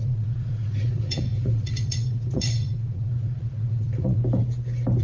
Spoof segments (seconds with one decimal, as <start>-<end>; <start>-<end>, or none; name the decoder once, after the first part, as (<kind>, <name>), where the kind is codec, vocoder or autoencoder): 0.0-4.2 (vocoder, Vocos)